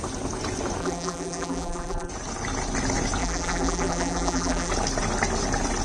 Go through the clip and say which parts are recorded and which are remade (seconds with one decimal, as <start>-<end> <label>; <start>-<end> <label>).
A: 0.0-0.8 recorded; 0.8-2.1 remade; 2.1-3.2 recorded; 3.2-4.7 remade; 4.7-5.8 recorded